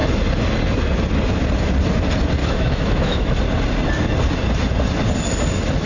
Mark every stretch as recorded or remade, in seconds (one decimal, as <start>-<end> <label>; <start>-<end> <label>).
0.0-2.4 recorded; 2.4-3.4 remade; 3.4-5.9 recorded